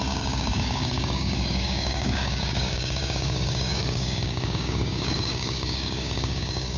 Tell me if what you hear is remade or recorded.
remade